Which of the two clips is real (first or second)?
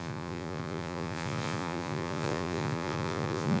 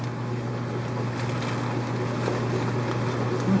second